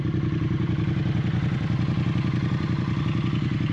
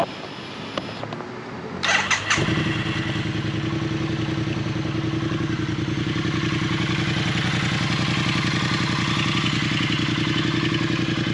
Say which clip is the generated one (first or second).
first